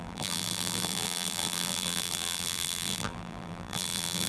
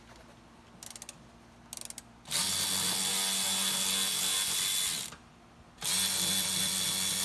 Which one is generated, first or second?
first